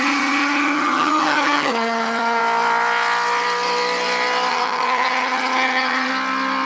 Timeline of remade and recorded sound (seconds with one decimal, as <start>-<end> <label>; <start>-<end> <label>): 0.0-2.4 remade; 2.4-4.5 recorded; 4.5-6.1 remade; 6.1-6.7 recorded